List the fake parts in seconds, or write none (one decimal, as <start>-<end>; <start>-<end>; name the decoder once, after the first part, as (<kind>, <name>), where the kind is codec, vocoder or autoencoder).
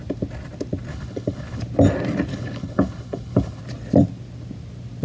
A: 0.9-1.6 (codec, HILCodec); 2.3-3.6